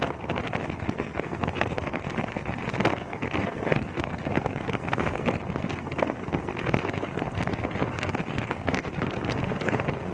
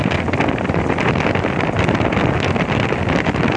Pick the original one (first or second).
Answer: second